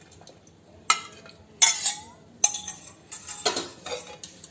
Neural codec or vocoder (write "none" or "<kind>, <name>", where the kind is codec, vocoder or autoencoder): none